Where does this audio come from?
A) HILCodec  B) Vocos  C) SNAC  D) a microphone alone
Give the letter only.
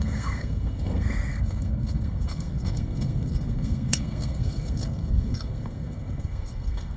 C